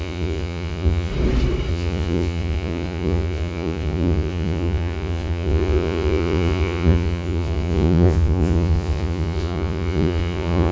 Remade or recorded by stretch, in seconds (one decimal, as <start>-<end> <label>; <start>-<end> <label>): 0.0-1.1 remade; 1.1-1.7 recorded; 1.7-10.7 remade